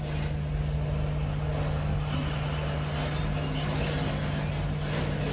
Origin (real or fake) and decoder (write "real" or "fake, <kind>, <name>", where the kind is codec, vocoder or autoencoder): real